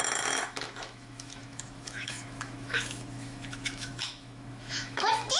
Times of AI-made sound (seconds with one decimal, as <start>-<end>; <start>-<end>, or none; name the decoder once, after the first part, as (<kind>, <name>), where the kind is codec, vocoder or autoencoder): 0.0-5.4 (autoencoder, DAC-VAE)